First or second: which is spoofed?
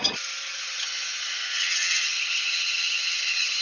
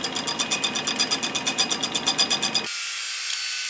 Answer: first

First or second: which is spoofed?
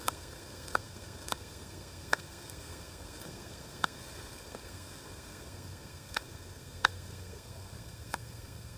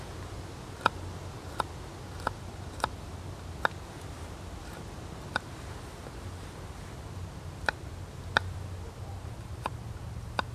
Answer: first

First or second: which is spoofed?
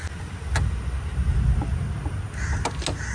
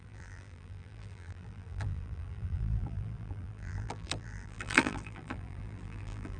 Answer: second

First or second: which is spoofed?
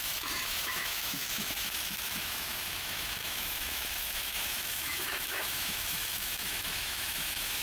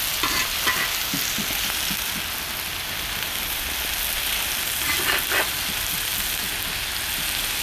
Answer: first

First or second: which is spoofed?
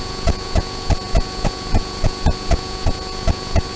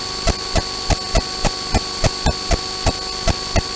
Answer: first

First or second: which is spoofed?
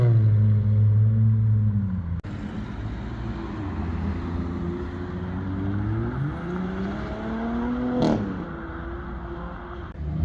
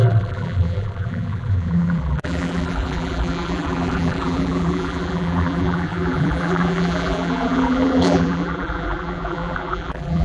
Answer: second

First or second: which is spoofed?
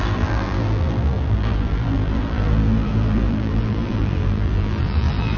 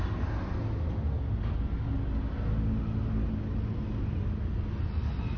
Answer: first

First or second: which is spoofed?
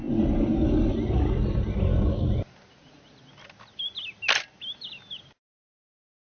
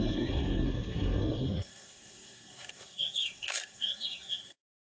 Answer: second